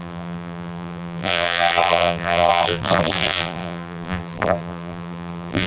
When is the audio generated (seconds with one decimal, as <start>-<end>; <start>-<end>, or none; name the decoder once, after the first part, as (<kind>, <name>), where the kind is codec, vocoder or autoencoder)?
0.0-5.7 (vocoder, BigVGAN v2)